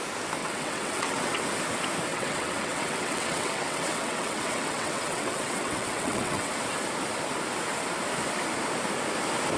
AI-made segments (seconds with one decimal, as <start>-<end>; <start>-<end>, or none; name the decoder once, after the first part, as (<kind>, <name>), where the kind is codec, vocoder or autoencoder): 0.4-1.4 (vocoder, WaveNeXt); 2.1-6.5